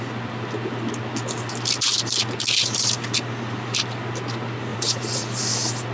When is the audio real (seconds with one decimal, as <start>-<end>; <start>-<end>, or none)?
0.0-4.7; 5.4-5.9